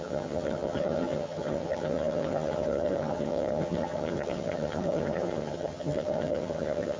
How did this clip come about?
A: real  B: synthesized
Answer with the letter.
B